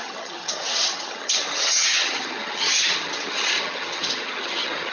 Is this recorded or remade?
remade